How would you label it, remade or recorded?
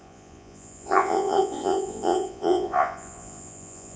remade